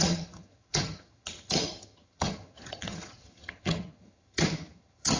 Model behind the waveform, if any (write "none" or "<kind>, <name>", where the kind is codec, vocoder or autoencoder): vocoder, HiFi-GAN